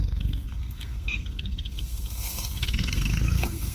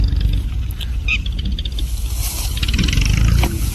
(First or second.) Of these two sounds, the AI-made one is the first